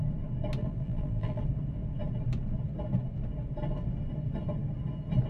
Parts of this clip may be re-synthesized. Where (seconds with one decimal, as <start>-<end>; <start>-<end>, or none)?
0.6-1.4